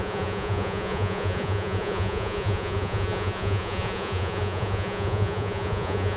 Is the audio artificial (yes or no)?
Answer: yes